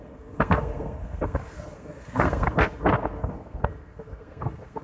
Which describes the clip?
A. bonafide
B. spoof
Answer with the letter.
B